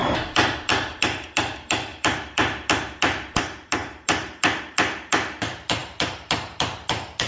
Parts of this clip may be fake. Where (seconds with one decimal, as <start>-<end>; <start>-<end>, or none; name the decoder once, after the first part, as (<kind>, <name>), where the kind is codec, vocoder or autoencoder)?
0.0-0.7 (vocoder, BigVGAN v2); 1.9-2.7